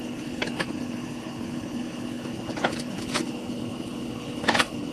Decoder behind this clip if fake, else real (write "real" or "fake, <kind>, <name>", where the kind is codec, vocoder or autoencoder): fake, codec, HILCodec